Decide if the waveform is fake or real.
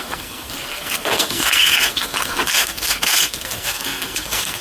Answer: fake